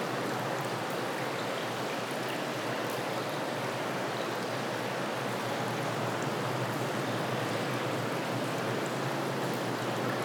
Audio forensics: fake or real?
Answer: real